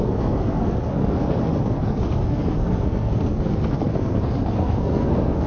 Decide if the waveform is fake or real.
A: fake